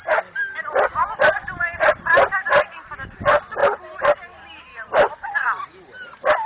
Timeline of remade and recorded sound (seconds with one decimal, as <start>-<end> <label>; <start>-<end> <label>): 0.0-3.6 recorded; 3.6-5.3 remade; 5.3-6.5 recorded